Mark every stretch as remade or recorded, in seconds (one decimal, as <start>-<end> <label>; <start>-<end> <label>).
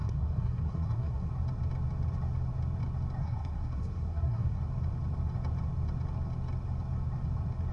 0.0-1.3 remade; 1.3-3.2 recorded; 3.2-4.6 remade; 4.6-7.7 recorded